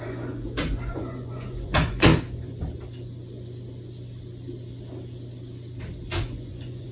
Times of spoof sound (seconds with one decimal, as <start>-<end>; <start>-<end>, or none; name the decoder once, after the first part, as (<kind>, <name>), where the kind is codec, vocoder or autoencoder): 0.0-2.1 (vocoder, Vocos); 6.2-6.9